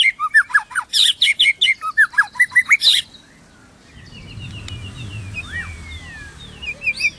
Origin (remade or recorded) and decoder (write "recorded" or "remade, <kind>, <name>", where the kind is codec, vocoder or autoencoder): recorded